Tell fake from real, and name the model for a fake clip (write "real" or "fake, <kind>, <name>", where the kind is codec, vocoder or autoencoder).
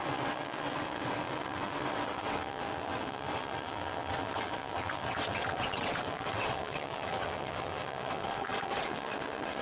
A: fake, vocoder, WaveNeXt